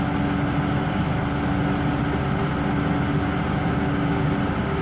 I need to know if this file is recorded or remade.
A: recorded